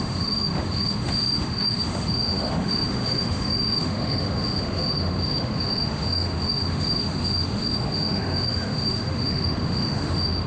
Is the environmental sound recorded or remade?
remade